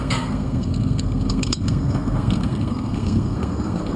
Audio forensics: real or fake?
fake